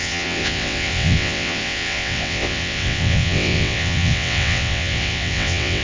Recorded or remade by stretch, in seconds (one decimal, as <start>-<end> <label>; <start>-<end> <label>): 0.0-5.8 remade